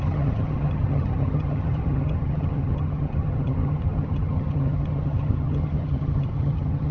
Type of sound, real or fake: fake